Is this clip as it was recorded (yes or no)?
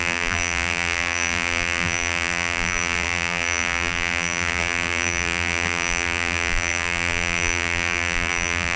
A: no